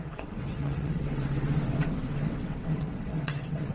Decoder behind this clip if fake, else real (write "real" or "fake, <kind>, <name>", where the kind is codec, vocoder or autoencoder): fake, vocoder, WaveNeXt